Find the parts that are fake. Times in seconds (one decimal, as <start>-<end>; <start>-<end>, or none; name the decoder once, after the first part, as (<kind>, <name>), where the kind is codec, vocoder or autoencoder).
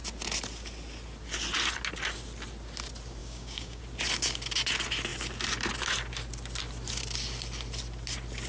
3.2-3.8 (codec, DAC)